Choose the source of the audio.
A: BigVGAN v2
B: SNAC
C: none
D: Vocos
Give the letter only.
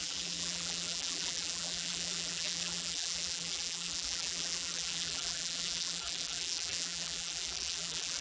A